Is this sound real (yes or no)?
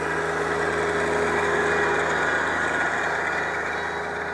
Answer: yes